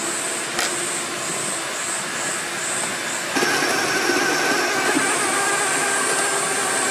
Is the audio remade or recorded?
recorded